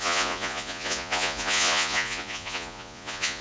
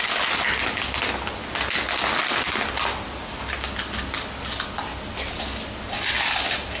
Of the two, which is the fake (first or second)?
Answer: first